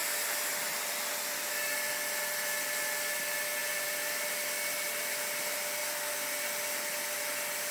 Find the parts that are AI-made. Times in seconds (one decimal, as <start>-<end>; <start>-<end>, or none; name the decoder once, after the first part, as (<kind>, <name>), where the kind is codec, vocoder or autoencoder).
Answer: none